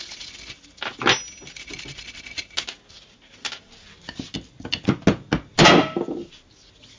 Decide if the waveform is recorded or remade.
recorded